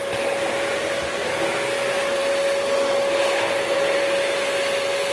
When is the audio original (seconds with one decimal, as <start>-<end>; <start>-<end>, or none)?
0.0-5.1